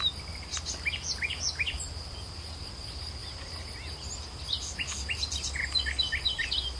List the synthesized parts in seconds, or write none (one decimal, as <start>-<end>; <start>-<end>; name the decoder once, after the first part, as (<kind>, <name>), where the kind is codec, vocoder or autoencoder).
none